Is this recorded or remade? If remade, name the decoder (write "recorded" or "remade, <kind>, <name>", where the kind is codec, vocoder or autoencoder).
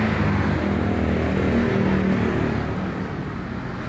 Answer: recorded